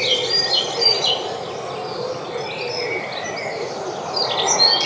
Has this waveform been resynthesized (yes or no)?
no